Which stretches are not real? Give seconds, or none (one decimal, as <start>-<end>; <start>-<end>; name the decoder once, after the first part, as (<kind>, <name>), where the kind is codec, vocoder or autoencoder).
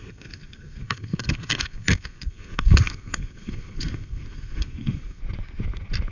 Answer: 0.0-5.2 (codec, SNAC)